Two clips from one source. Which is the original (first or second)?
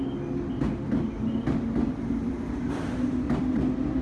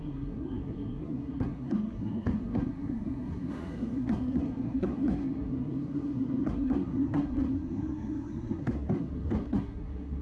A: first